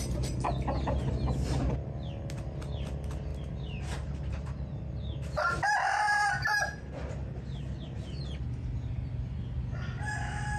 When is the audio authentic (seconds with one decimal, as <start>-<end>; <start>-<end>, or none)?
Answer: 0.0-10.6